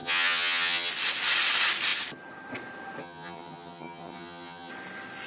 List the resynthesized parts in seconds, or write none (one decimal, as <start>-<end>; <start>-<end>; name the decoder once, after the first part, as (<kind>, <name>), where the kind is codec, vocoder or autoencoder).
0.0-0.9 (vocoder, HiFi-GAN); 3.0-4.7